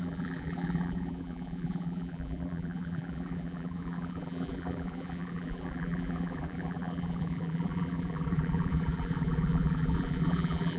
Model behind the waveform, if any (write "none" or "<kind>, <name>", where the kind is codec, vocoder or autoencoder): vocoder, BigVGAN v2